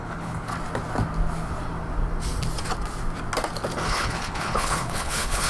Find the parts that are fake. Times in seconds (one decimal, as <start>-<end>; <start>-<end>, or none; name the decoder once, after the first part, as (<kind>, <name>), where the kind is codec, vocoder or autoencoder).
0.0-0.5 (codec, HILCodec); 3.8-5.5